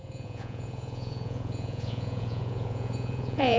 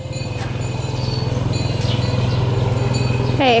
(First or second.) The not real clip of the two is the first